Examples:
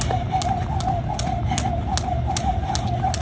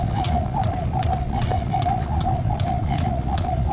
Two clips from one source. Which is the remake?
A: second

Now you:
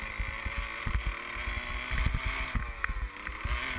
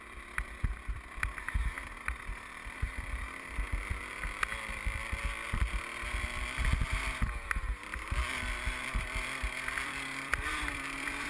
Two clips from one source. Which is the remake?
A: second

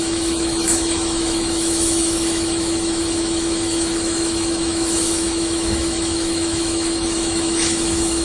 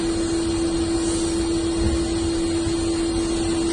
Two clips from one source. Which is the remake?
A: first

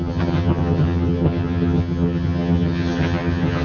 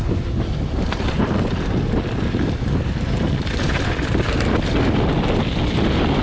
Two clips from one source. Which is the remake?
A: first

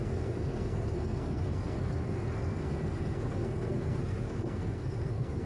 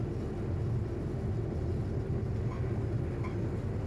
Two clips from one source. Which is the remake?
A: first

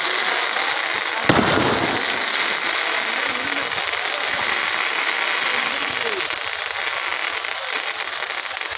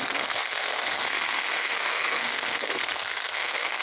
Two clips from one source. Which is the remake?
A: second